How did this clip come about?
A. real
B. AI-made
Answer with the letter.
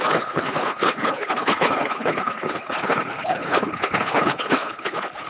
B